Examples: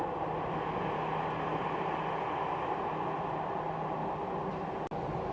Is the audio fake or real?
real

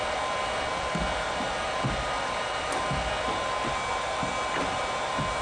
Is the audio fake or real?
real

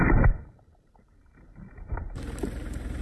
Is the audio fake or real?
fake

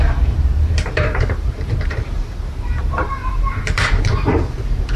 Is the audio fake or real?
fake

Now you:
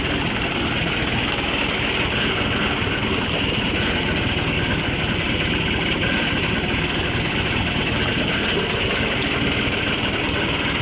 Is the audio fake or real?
real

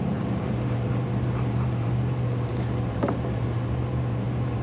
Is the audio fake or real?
fake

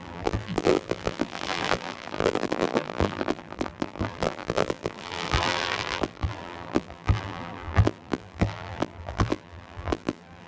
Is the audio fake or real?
fake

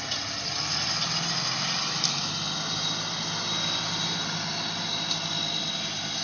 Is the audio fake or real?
real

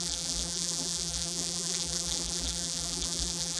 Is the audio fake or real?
fake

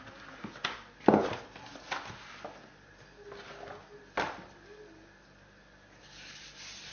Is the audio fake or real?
real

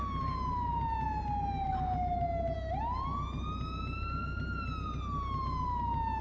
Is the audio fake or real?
real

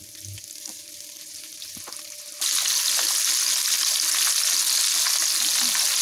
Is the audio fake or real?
real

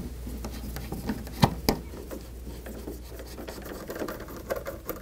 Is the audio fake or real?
real